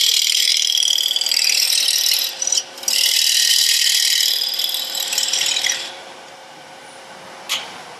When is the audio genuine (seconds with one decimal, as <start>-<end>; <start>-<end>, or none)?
none